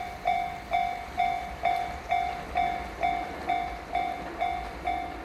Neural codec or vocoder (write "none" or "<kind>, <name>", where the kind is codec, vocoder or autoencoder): vocoder, BigVGAN v2